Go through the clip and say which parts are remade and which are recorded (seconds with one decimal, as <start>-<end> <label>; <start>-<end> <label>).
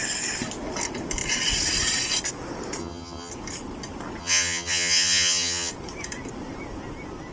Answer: 0.0-2.8 recorded; 2.8-3.3 remade; 3.3-4.2 recorded; 4.2-5.7 remade; 5.7-7.3 recorded